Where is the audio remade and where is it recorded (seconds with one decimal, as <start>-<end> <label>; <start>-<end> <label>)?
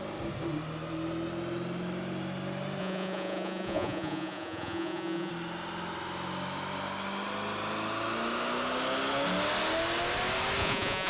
0.0-2.8 recorded; 2.8-5.3 remade; 5.3-10.6 recorded; 10.6-11.1 remade